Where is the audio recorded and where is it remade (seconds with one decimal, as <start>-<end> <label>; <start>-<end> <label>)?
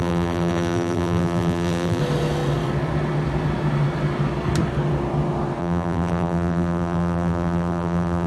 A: 0.0-2.0 remade; 2.0-5.6 recorded; 5.6-8.3 remade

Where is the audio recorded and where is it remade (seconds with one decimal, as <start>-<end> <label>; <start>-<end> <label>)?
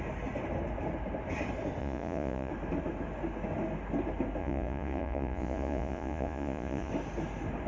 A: 0.0-1.8 recorded; 1.8-2.5 remade; 2.5-4.4 recorded; 4.4-6.9 remade; 6.9-7.7 recorded